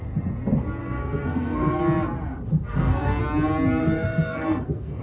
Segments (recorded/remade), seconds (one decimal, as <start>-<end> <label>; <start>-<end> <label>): 0.0-0.8 recorded; 0.8-1.8 remade; 1.8-2.5 recorded; 2.5-3.2 remade; 3.2-3.8 recorded; 3.8-5.0 remade